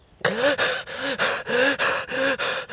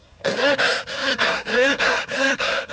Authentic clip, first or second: first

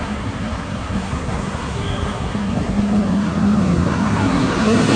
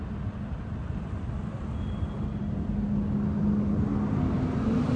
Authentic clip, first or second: second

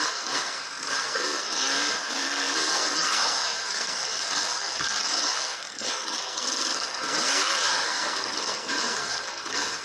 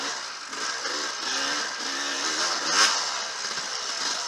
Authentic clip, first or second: second